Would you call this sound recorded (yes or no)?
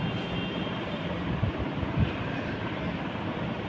yes